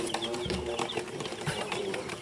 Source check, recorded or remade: recorded